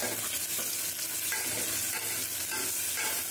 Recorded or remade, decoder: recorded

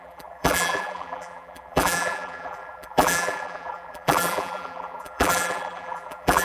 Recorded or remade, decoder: remade, vocoder, BigVGAN v2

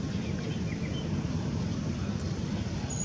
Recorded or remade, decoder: recorded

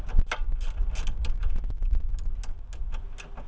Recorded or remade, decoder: recorded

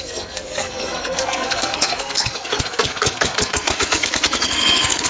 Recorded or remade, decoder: remade, codec, SNAC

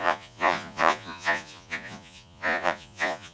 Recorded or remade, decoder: remade, vocoder, Vocos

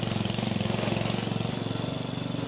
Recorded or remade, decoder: recorded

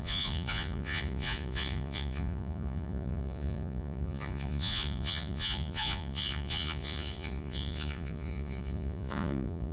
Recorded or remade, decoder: remade, vocoder, Vocos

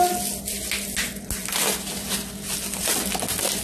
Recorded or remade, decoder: recorded